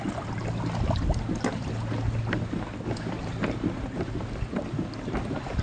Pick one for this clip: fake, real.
real